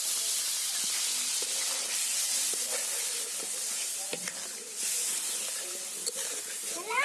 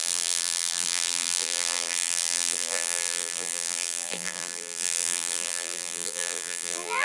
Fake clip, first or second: second